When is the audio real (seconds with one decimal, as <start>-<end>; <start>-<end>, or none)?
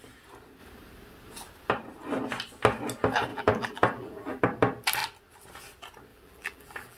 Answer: 0.0-3.3; 4.4-6.1